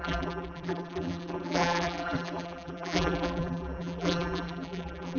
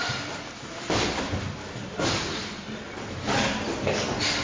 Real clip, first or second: second